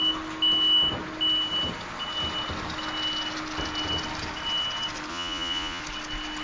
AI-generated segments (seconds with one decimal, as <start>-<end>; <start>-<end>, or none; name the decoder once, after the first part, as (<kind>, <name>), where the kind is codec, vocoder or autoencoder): 5.1-5.8 (vocoder, Vocos)